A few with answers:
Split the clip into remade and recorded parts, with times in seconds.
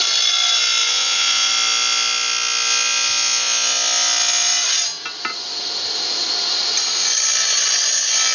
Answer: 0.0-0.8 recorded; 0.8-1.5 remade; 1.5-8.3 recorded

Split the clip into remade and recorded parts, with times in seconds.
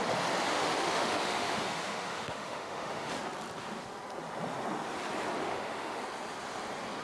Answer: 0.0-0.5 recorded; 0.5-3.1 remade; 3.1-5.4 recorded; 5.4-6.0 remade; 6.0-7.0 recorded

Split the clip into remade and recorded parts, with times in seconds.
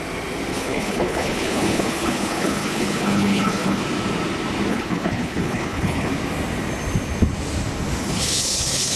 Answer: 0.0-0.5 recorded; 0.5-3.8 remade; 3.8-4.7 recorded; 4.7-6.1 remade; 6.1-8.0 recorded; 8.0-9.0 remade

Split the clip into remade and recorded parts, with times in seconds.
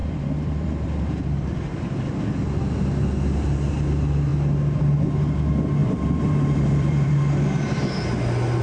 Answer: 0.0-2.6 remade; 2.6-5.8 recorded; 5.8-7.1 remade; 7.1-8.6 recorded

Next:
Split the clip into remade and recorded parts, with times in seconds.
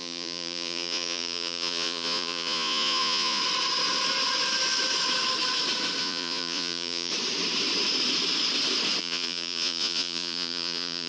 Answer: 0.0-3.4 remade; 3.4-6.0 recorded; 6.0-7.1 remade; 7.1-9.0 recorded; 9.0-11.1 remade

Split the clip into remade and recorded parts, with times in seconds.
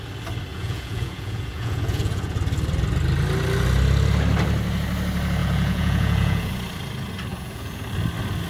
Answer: 0.0-0.5 recorded; 0.5-2.4 remade; 2.4-5.4 recorded; 5.4-6.5 remade; 6.5-7.3 recorded; 7.3-7.8 remade; 7.8-8.5 recorded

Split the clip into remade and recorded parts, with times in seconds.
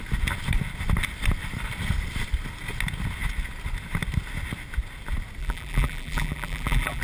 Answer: 0.0-5.4 recorded; 5.4-7.0 remade